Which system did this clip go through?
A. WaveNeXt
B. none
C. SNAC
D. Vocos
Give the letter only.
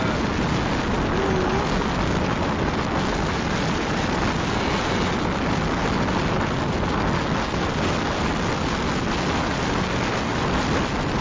B